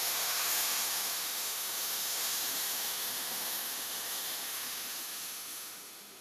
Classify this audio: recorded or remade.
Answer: remade